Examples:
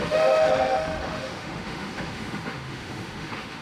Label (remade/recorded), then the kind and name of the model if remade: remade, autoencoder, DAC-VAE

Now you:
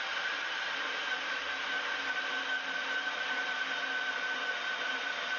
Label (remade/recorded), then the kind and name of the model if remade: recorded